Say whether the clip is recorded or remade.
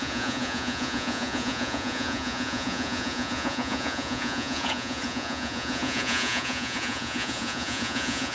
remade